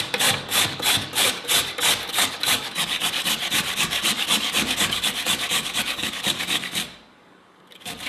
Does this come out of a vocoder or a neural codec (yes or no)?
yes